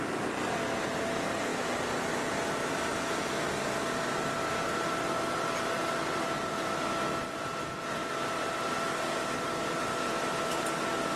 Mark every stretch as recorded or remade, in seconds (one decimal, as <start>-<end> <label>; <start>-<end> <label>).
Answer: 0.0-11.2 recorded

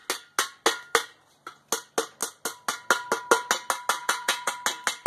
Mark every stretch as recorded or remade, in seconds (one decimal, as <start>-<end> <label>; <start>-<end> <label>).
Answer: 0.0-4.0 recorded; 4.0-4.5 remade; 4.5-5.1 recorded

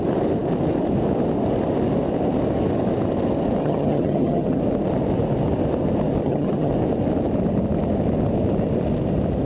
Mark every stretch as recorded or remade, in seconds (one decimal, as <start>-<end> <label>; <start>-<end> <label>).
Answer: 0.0-3.6 recorded; 3.6-4.6 remade; 4.6-6.2 recorded; 6.2-6.7 remade; 6.7-9.5 recorded